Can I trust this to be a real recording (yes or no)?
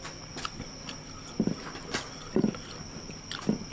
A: yes